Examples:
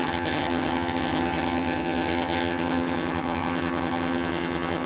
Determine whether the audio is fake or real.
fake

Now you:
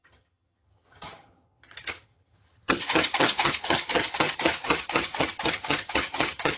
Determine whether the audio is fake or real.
fake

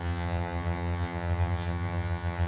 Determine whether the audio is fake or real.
fake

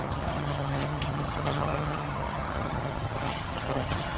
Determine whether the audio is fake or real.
fake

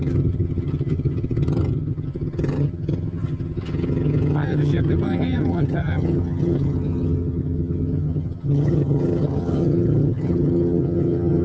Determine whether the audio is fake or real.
fake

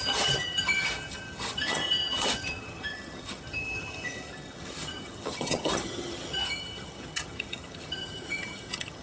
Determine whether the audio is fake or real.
fake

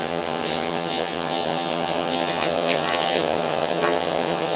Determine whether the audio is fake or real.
fake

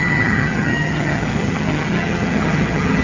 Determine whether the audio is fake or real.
fake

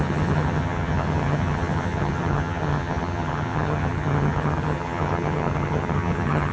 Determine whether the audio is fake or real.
fake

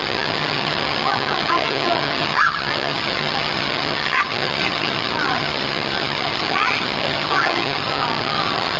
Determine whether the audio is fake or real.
fake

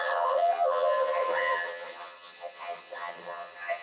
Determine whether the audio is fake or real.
fake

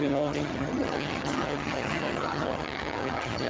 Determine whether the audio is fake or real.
fake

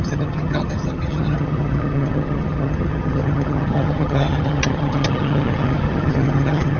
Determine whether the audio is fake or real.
fake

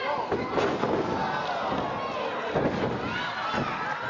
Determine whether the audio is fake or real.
real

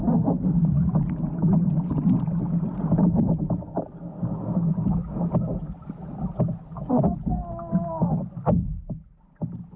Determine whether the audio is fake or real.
real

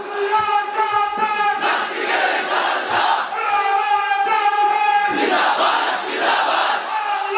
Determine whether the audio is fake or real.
real